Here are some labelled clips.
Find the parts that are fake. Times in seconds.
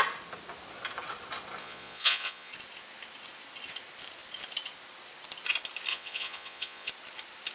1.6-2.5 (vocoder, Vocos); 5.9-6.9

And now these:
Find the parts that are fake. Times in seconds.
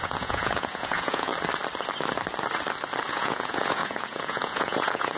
0.0-1.3 (vocoder, Vocos); 3.1-5.2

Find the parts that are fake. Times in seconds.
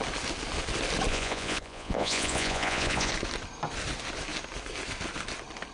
1.1-3.1 (vocoder, Vocos)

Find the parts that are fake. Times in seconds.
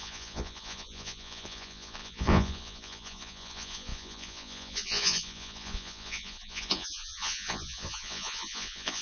0.0-9.0 (vocoder, Vocos)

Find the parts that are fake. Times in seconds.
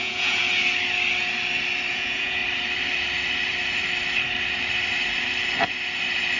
0.0-0.4 (vocoder, Vocos); 1.9-2.4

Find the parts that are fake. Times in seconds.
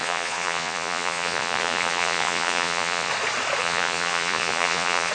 0.0-3.1 (vocoder, Vocos); 3.6-5.1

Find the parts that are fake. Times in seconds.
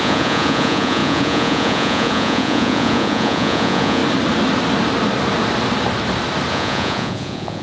0.0-4.0 (vocoder, Vocos); 6.5-7.6